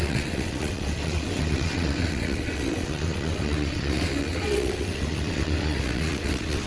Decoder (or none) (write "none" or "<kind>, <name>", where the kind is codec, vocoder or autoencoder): vocoder, WaveNeXt